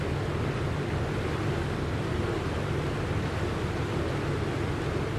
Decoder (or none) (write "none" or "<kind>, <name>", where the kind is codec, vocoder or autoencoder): none